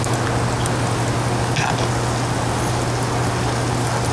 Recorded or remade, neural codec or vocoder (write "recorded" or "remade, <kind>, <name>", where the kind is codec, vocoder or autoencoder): recorded